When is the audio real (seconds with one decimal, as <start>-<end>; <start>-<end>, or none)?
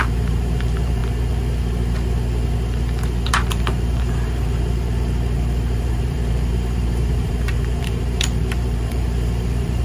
1.0-3.3